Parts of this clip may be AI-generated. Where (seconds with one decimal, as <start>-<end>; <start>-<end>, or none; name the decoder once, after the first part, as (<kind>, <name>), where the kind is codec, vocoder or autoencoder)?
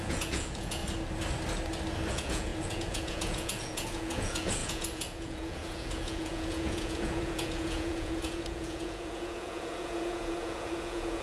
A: 0.0-0.8 (vocoder, Vocos); 2.1-11.2